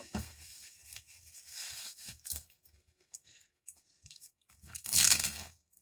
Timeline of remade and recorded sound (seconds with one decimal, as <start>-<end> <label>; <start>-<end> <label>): 0.0-5.8 remade